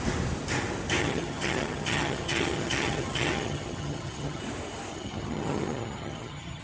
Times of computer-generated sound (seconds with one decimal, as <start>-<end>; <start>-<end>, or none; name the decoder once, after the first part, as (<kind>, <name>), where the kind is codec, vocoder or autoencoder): 1.0-4.4 (vocoder, HiFi-GAN); 4.9-6.6